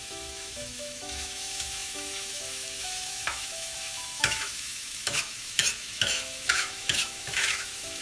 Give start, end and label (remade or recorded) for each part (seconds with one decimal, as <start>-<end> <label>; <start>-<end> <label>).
0.0-8.0 remade